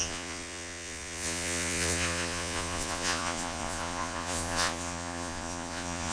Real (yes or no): no